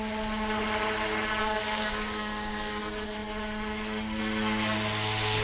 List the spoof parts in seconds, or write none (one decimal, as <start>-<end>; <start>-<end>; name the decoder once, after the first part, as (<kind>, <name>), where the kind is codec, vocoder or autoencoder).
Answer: 1.4-2.8 (codec, DAC)